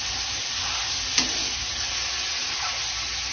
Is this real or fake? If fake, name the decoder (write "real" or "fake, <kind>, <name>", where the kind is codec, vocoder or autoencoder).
real